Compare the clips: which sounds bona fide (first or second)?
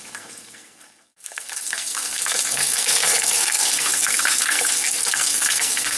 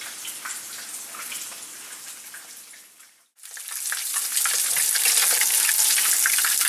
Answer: second